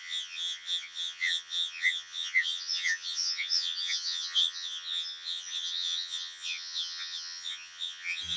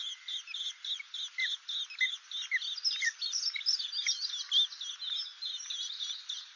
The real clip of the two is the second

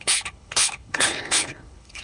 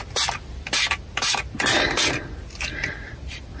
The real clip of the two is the second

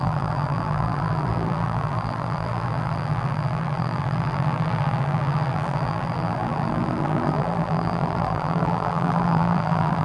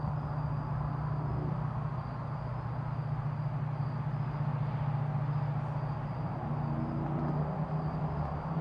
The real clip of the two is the second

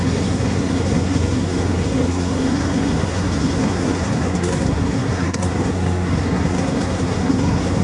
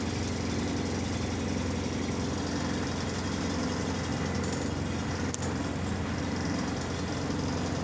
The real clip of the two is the second